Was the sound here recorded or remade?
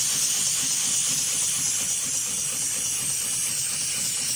recorded